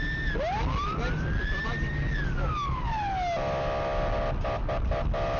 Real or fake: real